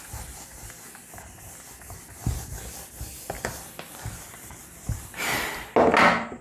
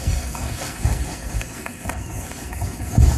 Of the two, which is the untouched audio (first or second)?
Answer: first